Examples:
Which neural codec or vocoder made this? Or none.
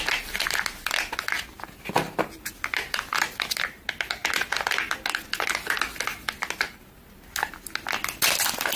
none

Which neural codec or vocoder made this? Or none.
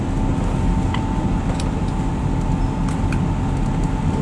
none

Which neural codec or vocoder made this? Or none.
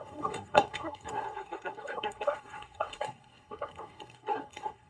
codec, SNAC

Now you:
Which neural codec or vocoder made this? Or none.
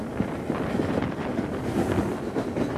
none